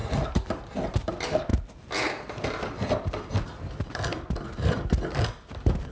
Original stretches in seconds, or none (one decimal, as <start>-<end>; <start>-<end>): 0.0-5.9